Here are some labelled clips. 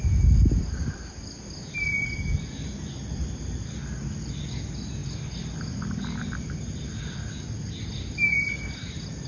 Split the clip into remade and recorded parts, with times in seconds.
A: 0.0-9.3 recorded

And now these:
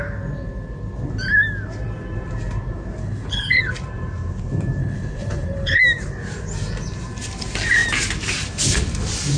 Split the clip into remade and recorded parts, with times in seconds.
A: 0.0-3.0 recorded; 3.0-3.6 remade; 3.6-4.8 recorded; 4.8-5.8 remade; 5.8-9.4 recorded

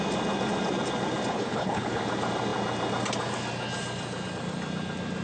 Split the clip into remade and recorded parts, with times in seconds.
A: 0.0-1.3 recorded; 1.3-2.0 remade; 2.0-5.2 recorded

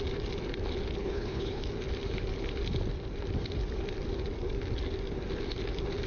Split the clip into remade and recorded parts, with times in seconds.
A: 0.0-1.0 recorded; 1.0-1.6 remade; 1.6-6.1 recorded

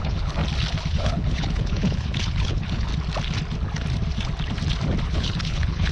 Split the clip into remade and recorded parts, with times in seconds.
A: 0.0-0.4 remade; 0.4-0.9 recorded; 0.9-2.9 remade; 2.9-5.0 recorded; 5.0-5.9 remade

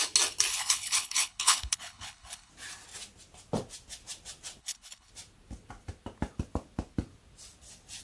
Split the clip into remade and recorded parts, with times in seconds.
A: 0.0-0.5 recorded; 0.5-2.5 remade; 2.5-4.6 recorded; 4.6-5.1 remade; 5.1-8.0 recorded

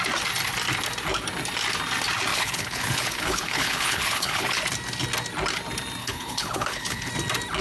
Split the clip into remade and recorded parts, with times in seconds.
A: 0.0-2.3 recorded; 2.3-4.6 remade; 4.6-6.0 recorded; 6.0-7.1 remade; 7.1-7.6 recorded